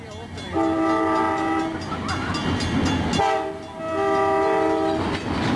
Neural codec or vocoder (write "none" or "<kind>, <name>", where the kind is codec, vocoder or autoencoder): none